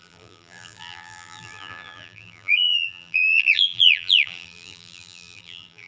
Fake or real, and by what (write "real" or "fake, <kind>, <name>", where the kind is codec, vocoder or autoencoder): fake, vocoder, BigVGAN v2